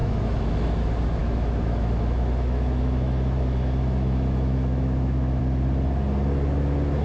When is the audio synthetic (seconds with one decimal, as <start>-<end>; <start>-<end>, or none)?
0.0-0.5; 1.2-5.4